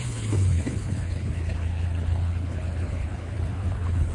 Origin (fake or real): fake